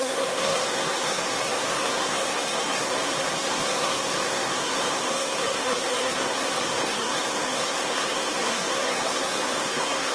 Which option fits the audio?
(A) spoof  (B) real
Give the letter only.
A